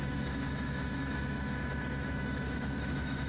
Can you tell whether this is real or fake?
fake